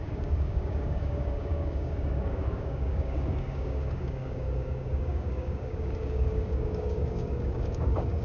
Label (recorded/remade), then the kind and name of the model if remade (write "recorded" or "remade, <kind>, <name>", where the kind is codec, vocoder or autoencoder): remade, codec, DAC